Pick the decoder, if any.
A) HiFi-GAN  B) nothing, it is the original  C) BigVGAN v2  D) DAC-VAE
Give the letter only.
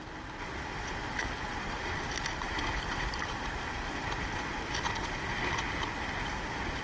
B